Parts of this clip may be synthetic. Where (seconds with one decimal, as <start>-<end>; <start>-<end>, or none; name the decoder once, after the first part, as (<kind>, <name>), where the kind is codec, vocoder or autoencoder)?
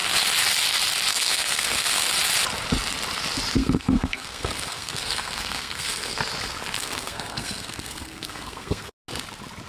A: 1.1-2.1 (codec, SNAC); 3.6-6.2; 6.8-8.9